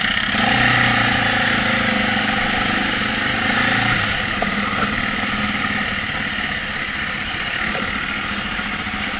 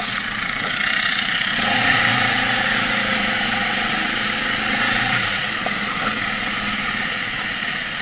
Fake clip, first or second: second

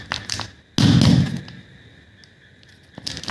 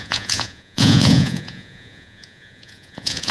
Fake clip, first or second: second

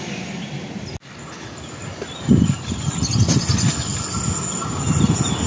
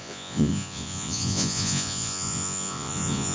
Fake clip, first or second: second